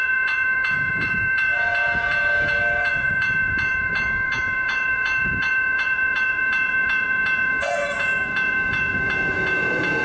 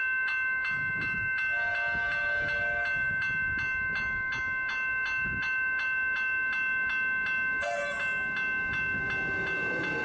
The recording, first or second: second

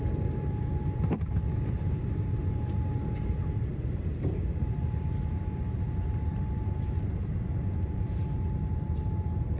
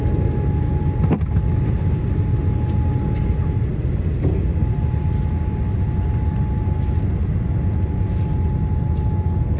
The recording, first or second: second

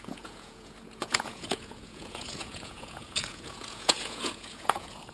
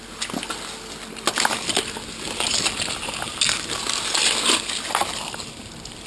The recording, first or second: second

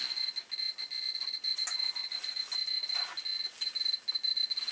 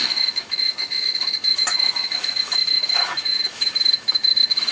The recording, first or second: first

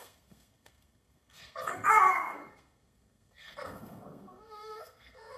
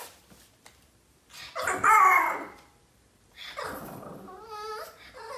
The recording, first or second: second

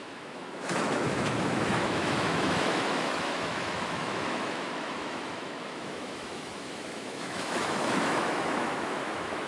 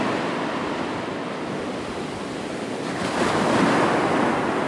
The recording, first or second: second